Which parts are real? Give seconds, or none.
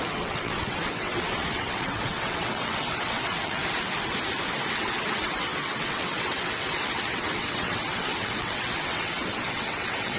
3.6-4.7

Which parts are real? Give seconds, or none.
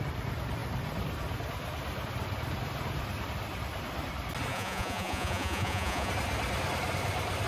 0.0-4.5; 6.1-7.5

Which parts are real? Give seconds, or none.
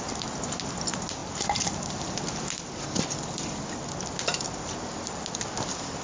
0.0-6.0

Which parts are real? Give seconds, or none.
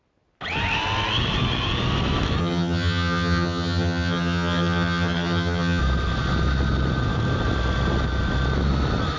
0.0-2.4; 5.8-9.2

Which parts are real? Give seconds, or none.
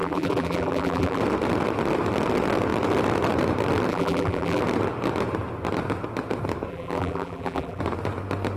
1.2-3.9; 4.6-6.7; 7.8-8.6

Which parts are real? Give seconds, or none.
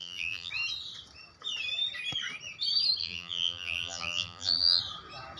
0.5-3.0; 4.8-5.4